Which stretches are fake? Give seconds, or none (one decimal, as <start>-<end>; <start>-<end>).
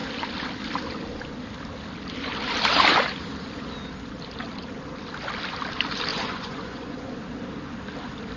6.1-7.1